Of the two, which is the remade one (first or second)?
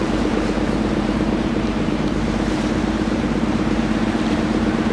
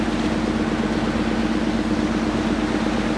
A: first